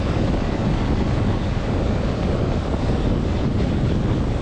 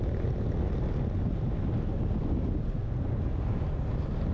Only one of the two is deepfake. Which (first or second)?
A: first